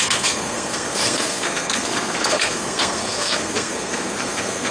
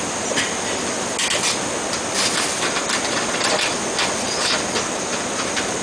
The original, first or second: second